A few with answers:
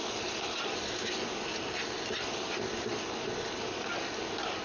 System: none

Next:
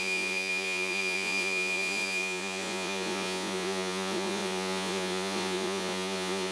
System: vocoder, Vocos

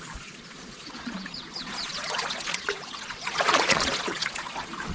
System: vocoder, Vocos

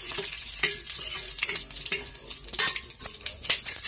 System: vocoder, Vocos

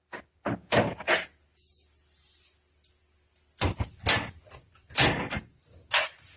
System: none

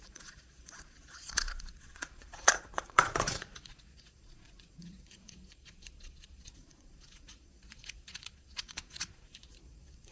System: vocoder, Vocos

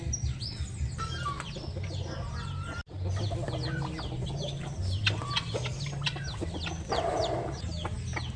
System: none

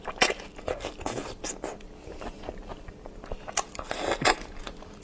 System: none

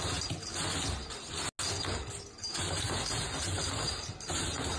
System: none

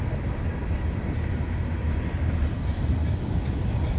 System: none